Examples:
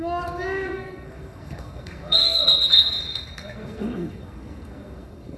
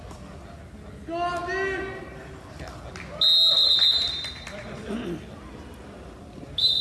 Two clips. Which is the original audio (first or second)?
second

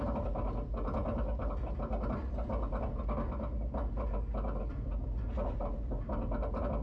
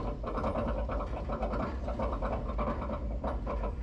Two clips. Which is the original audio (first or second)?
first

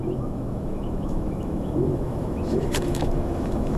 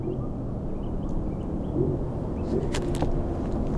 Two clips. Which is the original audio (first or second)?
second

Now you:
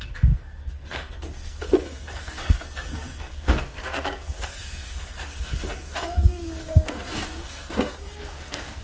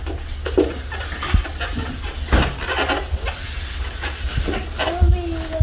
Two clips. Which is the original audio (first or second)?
second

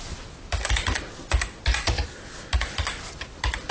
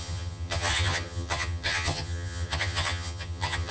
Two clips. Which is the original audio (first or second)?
first